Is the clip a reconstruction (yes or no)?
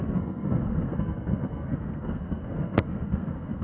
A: yes